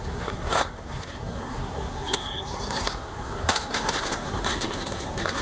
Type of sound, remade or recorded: remade